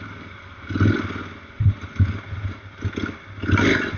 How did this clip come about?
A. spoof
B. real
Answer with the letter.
B